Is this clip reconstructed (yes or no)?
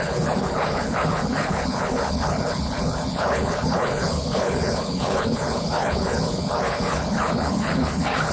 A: yes